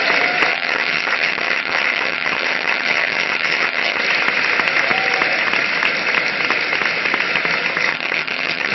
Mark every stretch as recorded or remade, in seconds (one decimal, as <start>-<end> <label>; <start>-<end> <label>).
0.0-0.5 recorded; 0.5-4.0 remade; 4.0-7.9 recorded; 7.9-8.7 remade